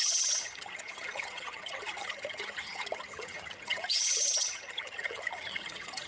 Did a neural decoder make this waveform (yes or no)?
yes